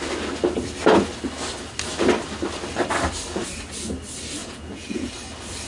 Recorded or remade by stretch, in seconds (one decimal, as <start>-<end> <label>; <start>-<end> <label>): 0.0-4.4 recorded; 4.4-5.1 remade; 5.1-5.7 recorded